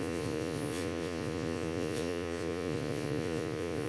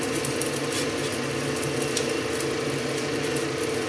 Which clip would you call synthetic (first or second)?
first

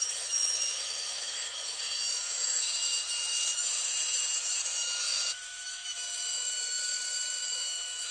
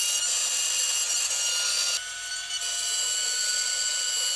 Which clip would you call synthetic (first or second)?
first